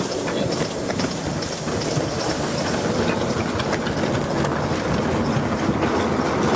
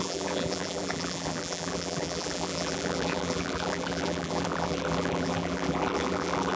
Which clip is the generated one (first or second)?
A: second